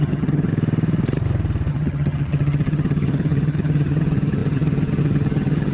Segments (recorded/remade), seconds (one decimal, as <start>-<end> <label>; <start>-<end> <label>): 0.0-0.5 remade; 0.5-1.7 recorded; 1.7-5.7 remade